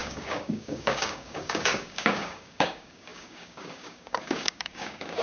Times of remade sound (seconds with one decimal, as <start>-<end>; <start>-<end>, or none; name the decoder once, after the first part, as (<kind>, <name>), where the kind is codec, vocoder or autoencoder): 0.0-5.2 (codec, DAC)